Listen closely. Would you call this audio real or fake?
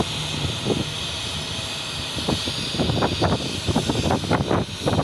real